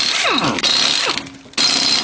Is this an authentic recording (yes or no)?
yes